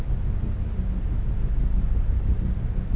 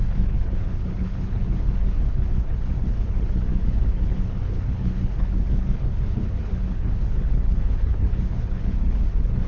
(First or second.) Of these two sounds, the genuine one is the first